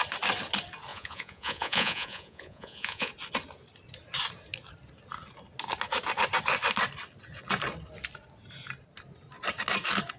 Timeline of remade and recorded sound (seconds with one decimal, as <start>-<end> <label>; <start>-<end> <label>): 0.0-0.9 recorded; 0.9-3.1 remade; 3.1-10.2 recorded